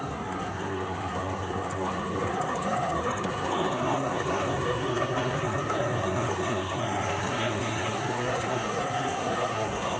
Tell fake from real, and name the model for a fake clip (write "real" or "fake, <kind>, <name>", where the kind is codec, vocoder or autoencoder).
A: fake, codec, SNAC